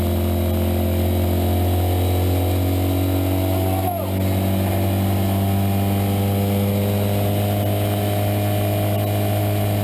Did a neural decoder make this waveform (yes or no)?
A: no